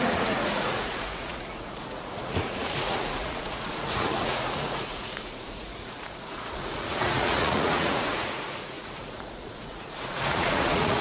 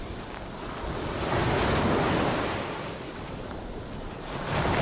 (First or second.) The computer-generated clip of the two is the first